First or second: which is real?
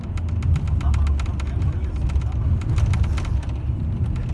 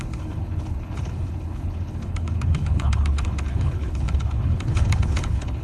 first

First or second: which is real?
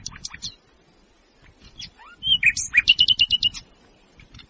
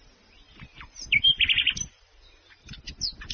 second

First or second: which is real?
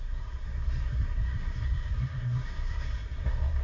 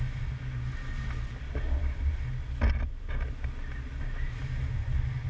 second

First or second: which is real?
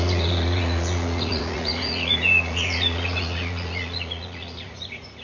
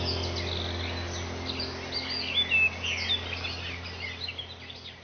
second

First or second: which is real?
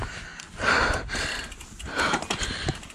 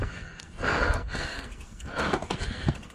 first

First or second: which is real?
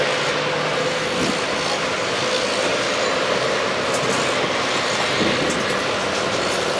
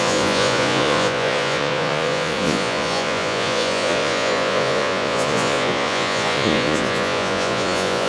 first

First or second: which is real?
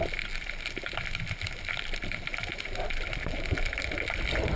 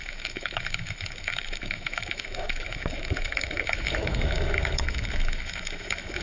first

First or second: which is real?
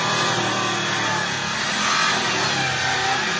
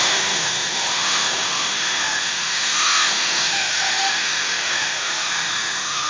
first